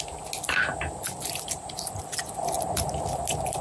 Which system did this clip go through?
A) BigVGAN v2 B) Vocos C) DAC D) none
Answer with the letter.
D